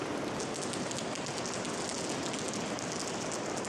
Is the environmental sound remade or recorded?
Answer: recorded